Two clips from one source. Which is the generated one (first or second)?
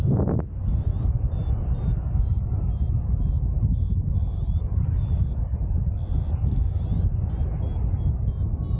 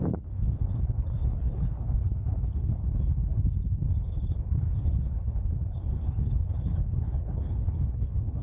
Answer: second